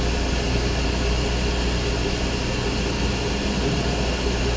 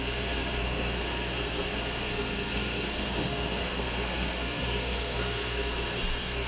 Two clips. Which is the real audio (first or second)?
first